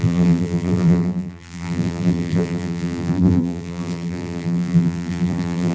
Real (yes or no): no